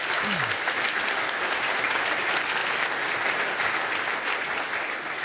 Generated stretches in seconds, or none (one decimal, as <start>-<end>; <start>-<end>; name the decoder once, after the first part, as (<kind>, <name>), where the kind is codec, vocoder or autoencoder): none